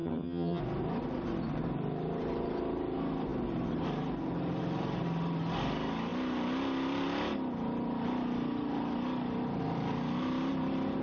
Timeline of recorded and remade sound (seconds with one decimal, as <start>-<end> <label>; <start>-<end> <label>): 0.0-0.6 remade; 0.6-11.0 recorded